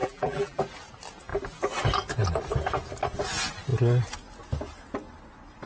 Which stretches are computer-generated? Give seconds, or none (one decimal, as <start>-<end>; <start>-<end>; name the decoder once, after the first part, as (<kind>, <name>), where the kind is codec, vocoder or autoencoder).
0.0-0.6 (vocoder, BigVGAN v2)